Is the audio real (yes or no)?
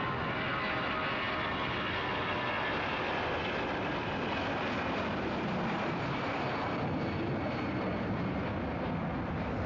yes